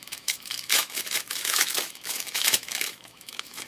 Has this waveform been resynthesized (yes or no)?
yes